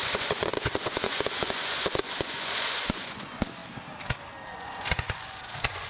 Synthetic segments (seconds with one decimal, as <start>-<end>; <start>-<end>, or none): 0.0-3.6; 4.5-5.9

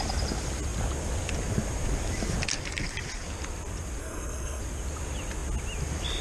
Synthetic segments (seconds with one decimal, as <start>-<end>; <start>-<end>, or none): 4.0-4.6